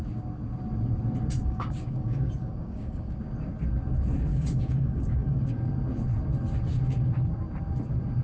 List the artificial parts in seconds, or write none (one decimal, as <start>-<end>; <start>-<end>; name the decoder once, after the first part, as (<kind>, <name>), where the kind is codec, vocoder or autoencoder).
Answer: 1.4-3.2 (codec, DAC); 4.3-5.7